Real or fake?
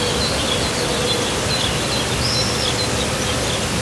real